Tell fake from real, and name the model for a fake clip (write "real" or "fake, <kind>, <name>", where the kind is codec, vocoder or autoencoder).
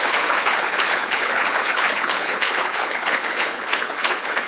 fake, codec, HILCodec